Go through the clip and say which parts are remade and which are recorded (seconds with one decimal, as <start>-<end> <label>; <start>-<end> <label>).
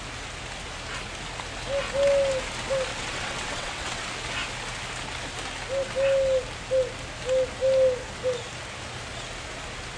0.0-2.9 recorded; 2.9-4.0 remade; 4.0-10.0 recorded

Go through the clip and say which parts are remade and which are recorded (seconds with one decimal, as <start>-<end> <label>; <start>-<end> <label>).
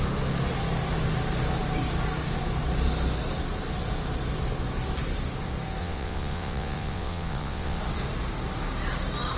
0.0-5.8 recorded; 5.8-7.8 remade; 7.8-9.4 recorded